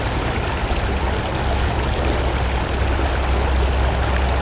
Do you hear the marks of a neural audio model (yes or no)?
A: no